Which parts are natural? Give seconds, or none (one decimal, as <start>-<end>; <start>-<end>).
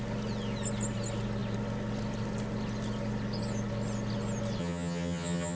0.0-4.6